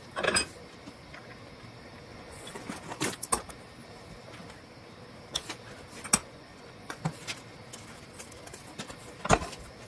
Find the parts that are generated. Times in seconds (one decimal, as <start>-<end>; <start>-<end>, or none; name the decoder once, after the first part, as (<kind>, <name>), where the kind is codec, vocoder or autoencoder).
2.1-2.7 (vocoder, Vocos); 6.2-7.0